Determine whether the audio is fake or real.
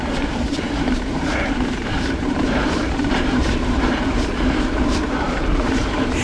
fake